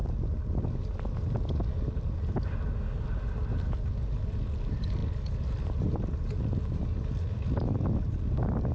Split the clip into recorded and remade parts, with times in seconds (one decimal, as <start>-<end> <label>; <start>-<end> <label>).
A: 0.0-8.7 recorded